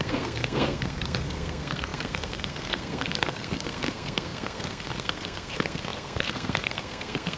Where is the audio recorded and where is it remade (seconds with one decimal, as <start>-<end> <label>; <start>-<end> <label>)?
0.0-7.4 remade

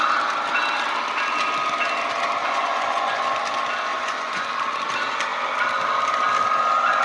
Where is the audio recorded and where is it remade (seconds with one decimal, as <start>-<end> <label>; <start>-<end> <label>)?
0.0-2.4 recorded; 2.4-3.2 remade; 3.2-3.9 recorded; 3.9-4.5 remade; 4.5-7.0 recorded